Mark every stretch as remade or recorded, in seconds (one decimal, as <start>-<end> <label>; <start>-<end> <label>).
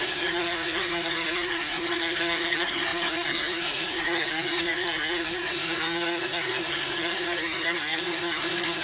0.0-8.8 remade